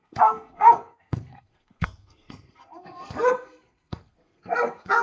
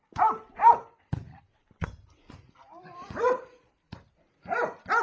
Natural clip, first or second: second